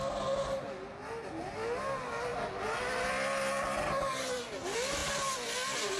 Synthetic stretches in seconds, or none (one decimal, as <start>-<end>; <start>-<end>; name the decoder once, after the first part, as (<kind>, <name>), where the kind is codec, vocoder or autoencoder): none